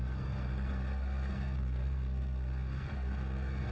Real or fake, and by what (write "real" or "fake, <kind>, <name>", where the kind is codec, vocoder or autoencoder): fake, codec, SNAC